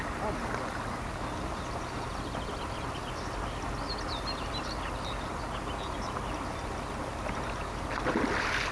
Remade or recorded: recorded